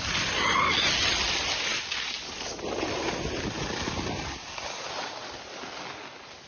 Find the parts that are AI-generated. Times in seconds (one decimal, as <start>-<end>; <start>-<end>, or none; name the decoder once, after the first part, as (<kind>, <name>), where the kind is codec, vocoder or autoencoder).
none